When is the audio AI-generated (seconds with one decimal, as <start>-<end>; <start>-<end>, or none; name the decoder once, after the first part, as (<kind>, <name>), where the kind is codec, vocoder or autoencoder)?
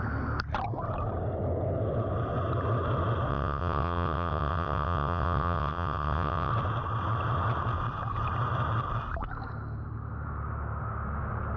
3.3-6.5 (vocoder, WaveNeXt)